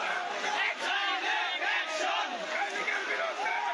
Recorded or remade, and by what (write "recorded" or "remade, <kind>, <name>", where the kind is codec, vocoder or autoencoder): recorded